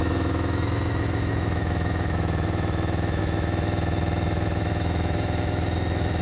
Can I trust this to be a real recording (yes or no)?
no